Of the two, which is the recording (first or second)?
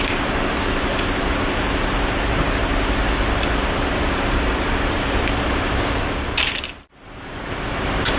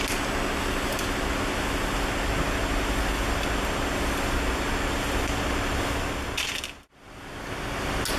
second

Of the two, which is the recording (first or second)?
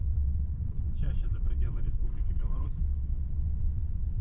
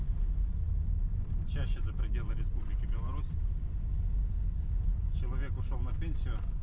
second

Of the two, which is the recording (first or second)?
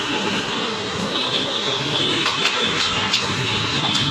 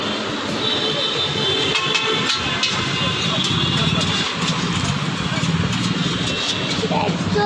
second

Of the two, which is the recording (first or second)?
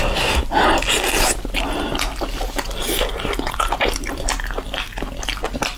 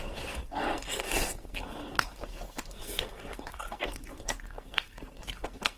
first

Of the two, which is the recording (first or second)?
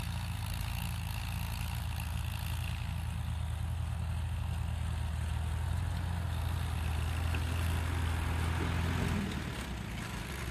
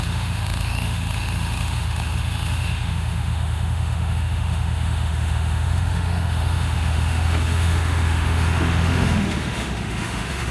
first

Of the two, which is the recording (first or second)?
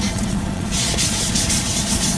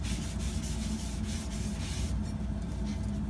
second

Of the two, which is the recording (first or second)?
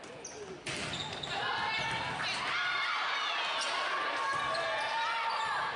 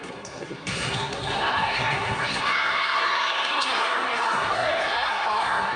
first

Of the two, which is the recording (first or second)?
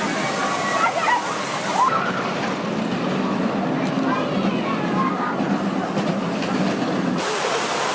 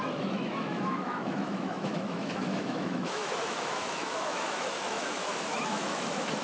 first